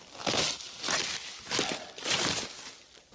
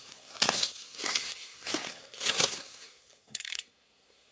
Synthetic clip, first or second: second